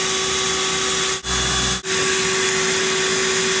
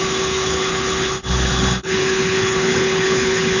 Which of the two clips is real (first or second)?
first